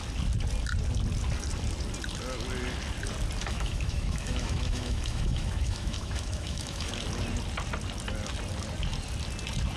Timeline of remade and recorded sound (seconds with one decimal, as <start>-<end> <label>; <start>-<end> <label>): 0.0-3.4 recorded; 3.4-6.9 remade; 6.9-9.8 recorded